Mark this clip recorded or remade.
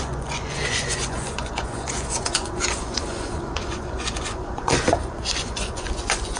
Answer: remade